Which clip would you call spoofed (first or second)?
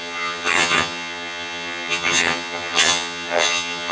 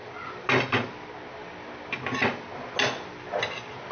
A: first